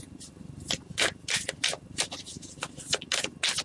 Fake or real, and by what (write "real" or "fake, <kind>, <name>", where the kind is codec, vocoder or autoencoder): real